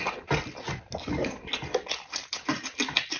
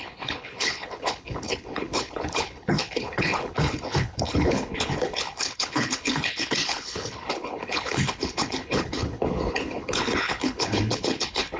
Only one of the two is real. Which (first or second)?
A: first